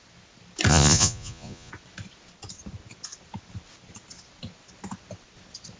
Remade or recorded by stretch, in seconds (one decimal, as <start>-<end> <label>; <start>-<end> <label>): 0.0-0.7 recorded; 0.7-1.7 remade; 1.7-5.8 recorded